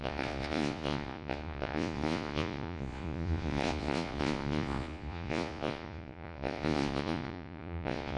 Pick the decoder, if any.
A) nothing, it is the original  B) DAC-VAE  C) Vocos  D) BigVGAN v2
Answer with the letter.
C